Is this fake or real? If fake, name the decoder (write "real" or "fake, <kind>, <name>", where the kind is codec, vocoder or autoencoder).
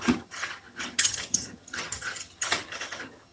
fake, vocoder, HiFi-GAN